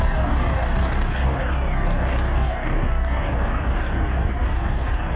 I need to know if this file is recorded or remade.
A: remade